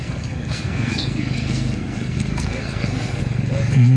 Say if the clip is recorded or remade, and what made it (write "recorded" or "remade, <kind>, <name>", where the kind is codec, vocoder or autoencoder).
remade, codec, SNAC